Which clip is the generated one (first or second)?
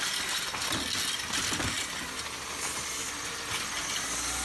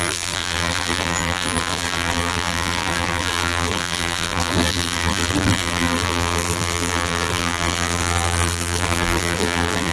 second